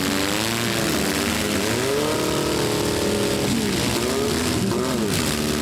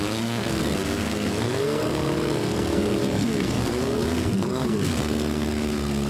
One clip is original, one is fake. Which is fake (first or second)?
second